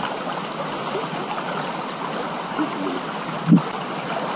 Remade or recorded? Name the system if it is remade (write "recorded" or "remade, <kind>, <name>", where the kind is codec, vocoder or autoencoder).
recorded